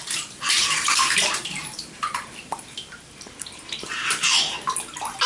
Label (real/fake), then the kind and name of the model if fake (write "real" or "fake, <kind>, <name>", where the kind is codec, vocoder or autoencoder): fake, vocoder, BigVGAN v2